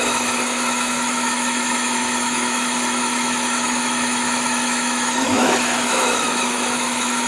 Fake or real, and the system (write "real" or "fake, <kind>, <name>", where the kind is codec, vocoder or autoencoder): fake, autoencoder, DAC-VAE